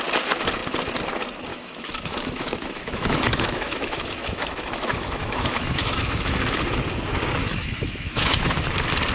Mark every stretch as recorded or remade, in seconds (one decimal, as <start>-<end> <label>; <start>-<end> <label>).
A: 0.0-1.5 recorded; 1.5-6.4 remade; 6.4-7.4 recorded; 7.4-8.6 remade; 8.6-9.1 recorded

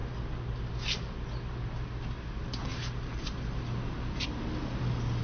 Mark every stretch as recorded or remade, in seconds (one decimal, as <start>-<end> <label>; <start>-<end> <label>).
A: 0.0-5.2 recorded

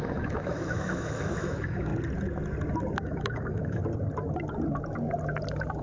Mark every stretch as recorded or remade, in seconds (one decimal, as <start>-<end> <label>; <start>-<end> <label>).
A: 0.0-1.9 remade; 1.9-3.0 recorded; 3.0-3.8 remade; 3.8-5.8 recorded